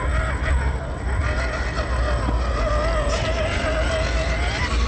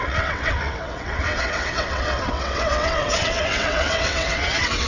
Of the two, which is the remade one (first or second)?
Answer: second